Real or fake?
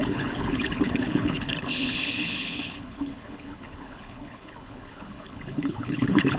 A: fake